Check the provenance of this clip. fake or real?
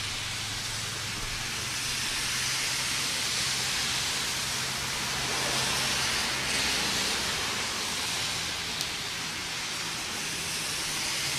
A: real